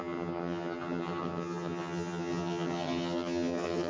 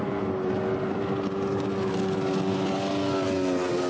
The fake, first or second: first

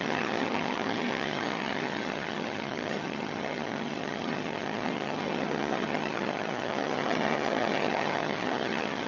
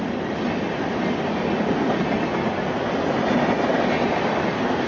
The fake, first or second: first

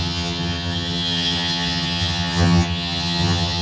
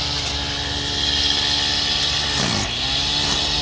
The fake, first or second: first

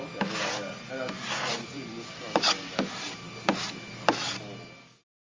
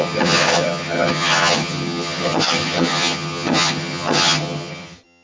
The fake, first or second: second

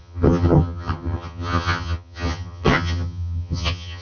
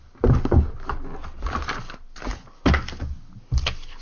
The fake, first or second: first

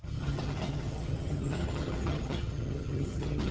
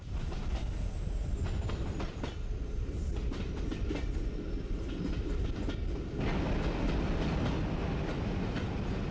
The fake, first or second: first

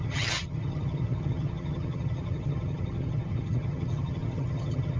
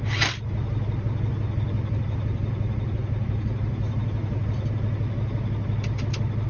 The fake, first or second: first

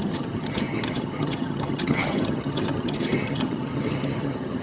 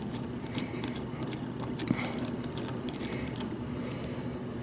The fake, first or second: first